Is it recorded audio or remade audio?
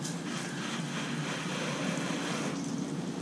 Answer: recorded